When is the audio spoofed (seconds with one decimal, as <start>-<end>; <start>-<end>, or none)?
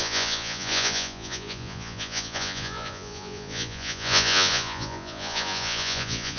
0.0-6.4